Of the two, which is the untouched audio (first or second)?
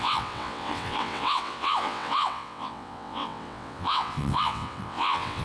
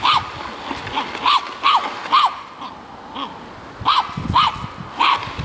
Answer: second